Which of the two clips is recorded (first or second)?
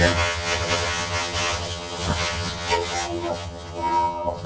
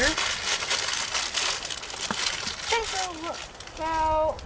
second